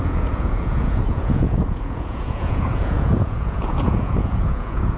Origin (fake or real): fake